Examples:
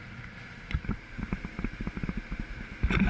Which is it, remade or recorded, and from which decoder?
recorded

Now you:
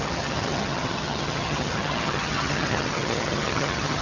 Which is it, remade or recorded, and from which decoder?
remade, vocoder, HiFi-GAN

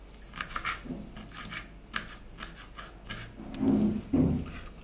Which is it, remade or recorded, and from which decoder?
recorded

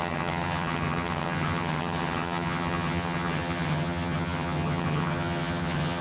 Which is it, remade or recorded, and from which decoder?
remade, vocoder, HiFi-GAN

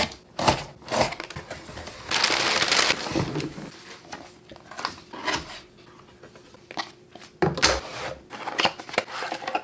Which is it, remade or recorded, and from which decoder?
recorded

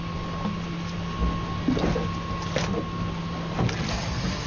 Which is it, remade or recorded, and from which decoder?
recorded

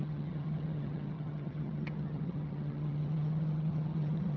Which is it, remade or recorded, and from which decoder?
remade, vocoder, HiFi-GAN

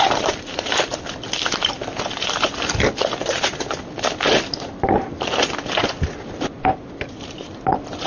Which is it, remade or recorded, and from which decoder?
recorded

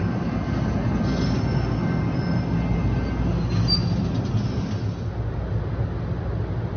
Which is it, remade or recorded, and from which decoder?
recorded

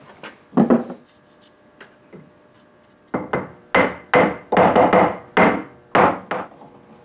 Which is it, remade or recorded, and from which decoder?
recorded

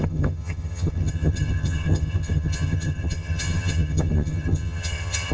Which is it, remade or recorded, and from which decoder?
remade, vocoder, HiFi-GAN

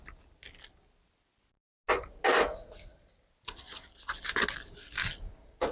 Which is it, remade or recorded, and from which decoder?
recorded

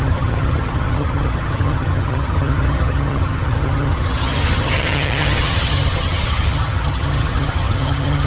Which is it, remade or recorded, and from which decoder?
remade, vocoder, HiFi-GAN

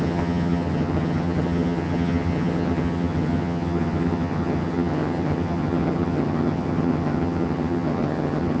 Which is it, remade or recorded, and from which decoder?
remade, vocoder, HiFi-GAN